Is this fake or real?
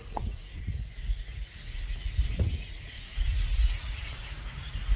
fake